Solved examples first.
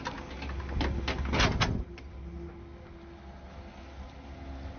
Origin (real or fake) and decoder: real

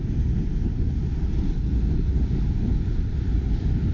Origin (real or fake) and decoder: real